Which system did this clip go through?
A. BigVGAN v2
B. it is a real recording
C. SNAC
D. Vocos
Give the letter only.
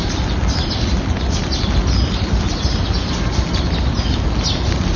B